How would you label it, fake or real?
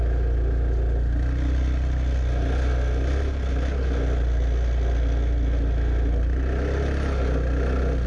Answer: real